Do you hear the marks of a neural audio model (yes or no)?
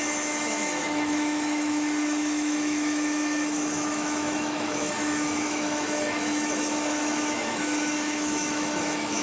yes